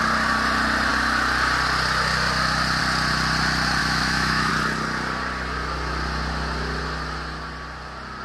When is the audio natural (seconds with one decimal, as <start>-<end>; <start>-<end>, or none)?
0.0-3.8; 4.5-8.2